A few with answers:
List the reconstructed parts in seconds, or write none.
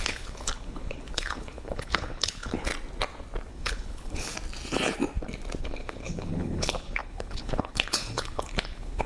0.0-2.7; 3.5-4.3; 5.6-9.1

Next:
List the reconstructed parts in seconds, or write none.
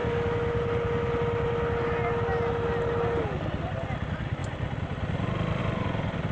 none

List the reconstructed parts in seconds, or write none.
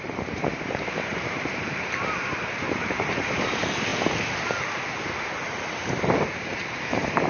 0.0-0.5; 1.1-3.9; 5.6-7.3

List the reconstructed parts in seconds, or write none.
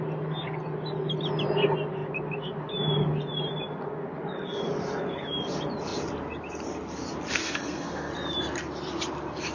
7.4-8.1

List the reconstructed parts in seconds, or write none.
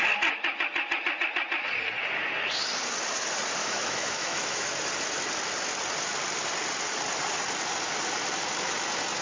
3.6-4.7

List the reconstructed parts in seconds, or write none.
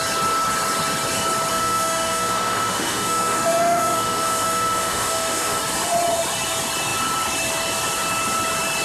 1.5-5.6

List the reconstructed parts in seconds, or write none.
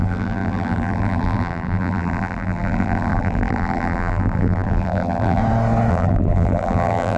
0.0-5.4; 5.9-7.2